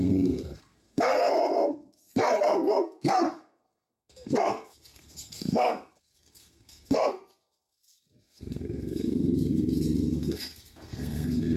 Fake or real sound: fake